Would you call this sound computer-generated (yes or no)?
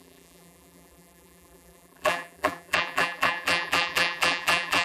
yes